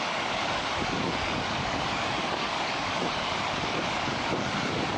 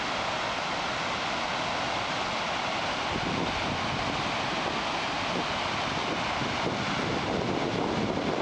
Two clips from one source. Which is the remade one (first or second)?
first